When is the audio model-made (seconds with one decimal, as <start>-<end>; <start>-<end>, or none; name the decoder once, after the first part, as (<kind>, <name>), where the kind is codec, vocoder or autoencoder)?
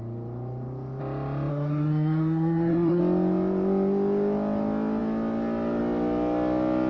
1.5-3.0 (codec, SNAC)